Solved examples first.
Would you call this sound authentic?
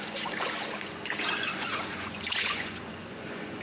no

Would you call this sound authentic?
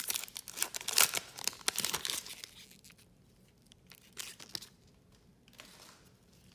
yes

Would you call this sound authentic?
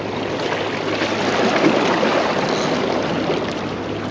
yes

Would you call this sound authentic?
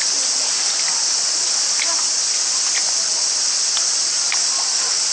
yes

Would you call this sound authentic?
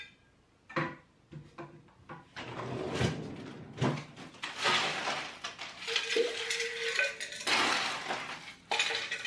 yes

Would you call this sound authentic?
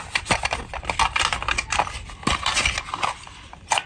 yes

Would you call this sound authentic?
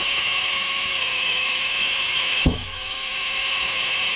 no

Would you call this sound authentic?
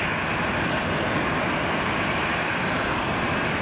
no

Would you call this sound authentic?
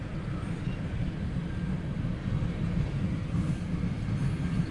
yes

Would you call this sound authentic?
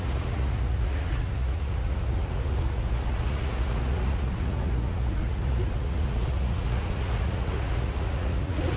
no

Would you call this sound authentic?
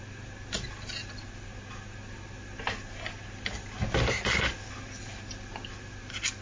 yes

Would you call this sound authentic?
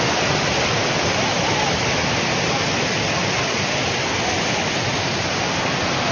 yes